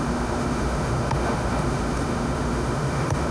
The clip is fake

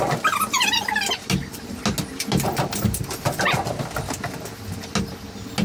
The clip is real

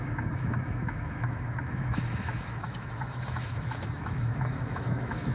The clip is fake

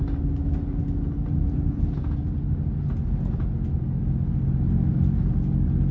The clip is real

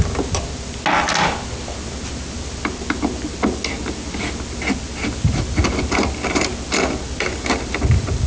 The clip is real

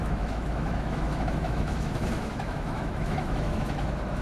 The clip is fake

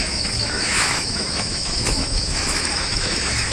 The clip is fake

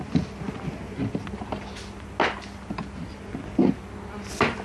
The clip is real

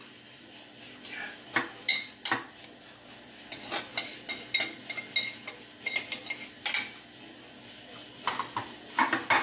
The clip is real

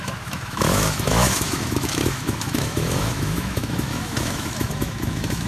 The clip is fake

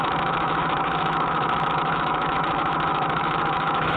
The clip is fake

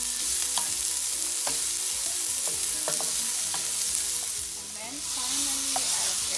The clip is real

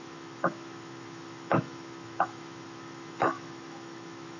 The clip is fake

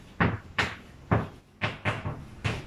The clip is real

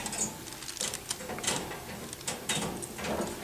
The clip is real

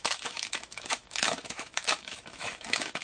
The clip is fake